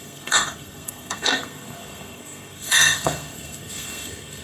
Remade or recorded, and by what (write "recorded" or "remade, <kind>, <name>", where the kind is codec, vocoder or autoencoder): remade, codec, SNAC